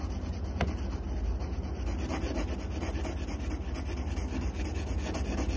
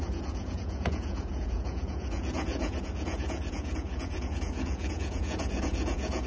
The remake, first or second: second